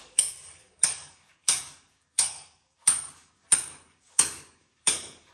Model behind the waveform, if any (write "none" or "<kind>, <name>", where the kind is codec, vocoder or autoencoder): codec, DAC